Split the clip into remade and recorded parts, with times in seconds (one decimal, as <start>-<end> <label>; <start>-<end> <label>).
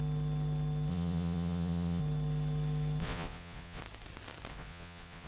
0.0-0.9 recorded; 0.9-2.0 remade; 2.0-3.0 recorded; 3.0-3.8 remade; 3.8-4.5 recorded; 4.5-5.3 remade